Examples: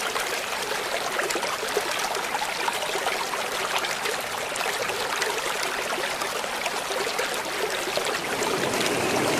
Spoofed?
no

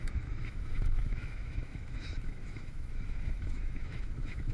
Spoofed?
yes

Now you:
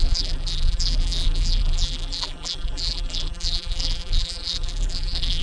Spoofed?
yes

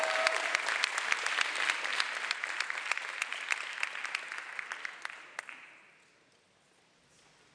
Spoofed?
no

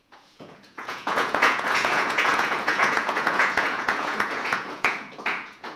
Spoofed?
yes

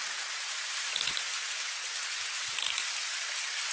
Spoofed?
no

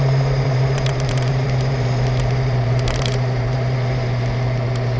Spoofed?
yes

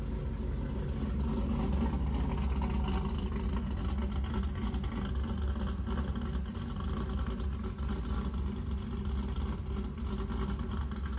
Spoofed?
no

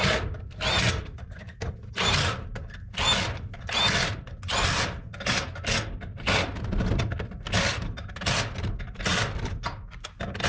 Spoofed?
no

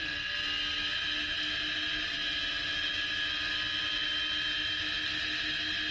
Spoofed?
no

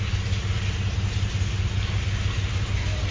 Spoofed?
no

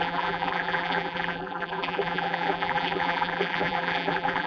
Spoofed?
yes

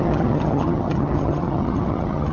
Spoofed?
yes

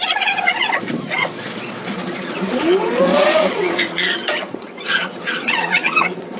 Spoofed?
yes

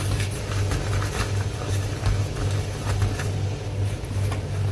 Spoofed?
no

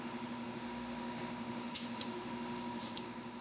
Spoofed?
yes